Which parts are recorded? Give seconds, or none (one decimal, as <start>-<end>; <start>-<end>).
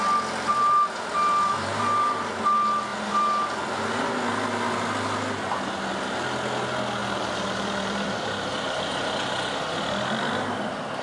0.0-0.5; 2.3-2.9; 3.4-7.0; 8.9-11.0